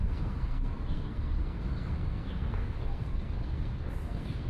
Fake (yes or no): yes